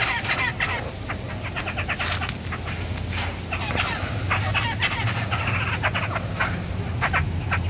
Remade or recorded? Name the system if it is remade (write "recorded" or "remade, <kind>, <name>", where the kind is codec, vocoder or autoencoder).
recorded